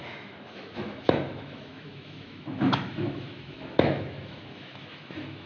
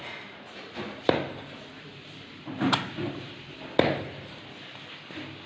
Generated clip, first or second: first